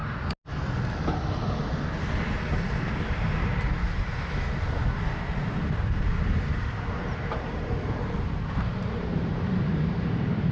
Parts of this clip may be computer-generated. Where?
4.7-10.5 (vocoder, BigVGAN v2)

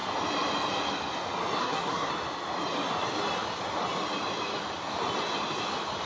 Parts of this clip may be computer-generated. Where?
1.6-2.1 (codec, SNAC)